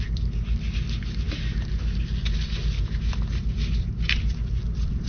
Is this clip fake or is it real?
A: real